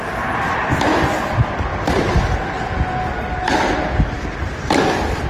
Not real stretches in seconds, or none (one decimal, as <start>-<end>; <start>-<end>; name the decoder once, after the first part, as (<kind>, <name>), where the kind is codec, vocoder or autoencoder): none